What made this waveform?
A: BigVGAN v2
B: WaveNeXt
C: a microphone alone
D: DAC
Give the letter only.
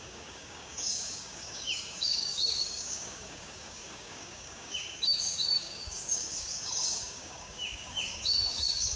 D